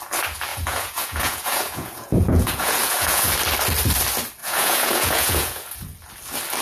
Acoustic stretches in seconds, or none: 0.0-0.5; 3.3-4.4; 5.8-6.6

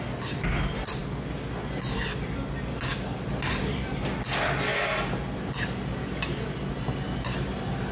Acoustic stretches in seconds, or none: 0.0-7.9

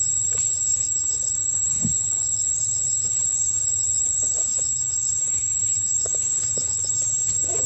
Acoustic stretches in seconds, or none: 0.0-0.7; 1.8-4.5; 7.0-7.7